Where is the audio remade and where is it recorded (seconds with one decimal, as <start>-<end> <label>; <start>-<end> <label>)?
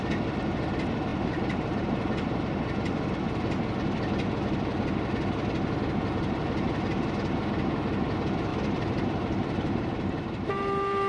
0.0-1.1 recorded; 1.1-3.2 remade; 3.2-8.5 recorded; 8.5-11.1 remade